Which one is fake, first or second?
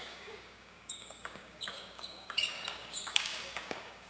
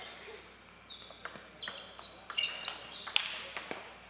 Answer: first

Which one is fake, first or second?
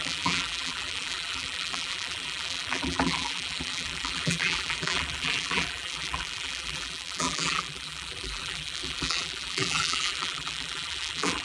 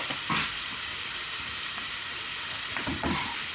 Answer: first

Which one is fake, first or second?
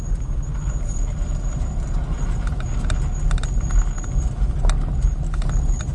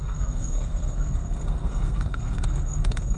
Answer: second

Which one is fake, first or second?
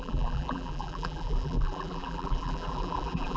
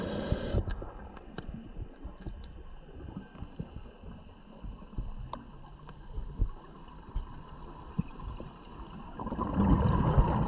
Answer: first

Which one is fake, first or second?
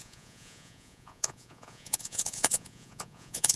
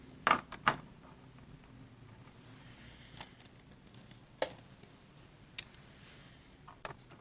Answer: first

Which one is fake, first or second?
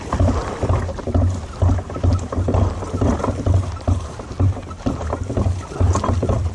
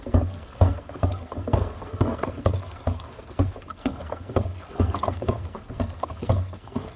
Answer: second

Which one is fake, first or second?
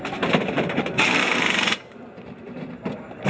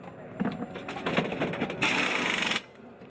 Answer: first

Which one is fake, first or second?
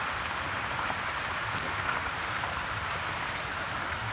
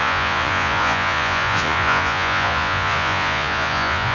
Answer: second